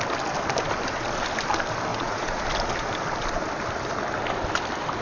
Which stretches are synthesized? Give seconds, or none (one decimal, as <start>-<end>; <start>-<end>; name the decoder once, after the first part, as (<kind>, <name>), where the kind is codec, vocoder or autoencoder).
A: 1.9-2.4 (vocoder, Vocos)